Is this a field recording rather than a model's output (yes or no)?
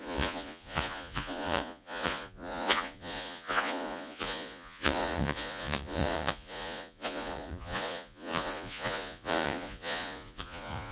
no